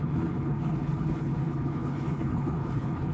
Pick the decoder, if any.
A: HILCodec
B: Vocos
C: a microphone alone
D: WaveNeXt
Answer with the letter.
A